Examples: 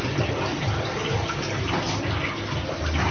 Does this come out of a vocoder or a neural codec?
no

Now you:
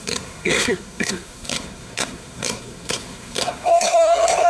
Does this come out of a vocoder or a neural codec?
yes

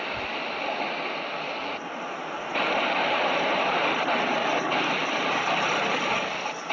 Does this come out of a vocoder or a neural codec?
no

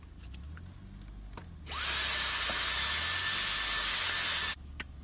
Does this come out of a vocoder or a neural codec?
no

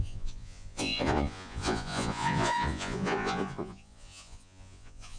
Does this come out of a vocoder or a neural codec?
yes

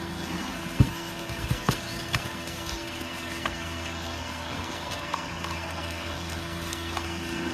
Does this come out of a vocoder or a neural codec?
yes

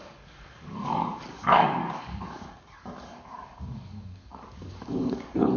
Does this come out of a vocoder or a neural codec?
yes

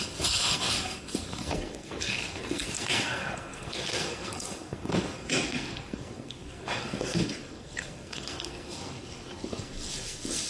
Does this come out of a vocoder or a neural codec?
yes